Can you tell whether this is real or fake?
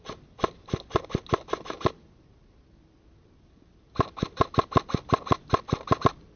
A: real